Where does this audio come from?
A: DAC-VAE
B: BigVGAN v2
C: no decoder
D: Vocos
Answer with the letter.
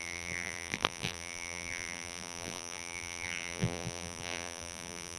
B